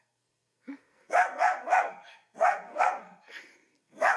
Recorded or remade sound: remade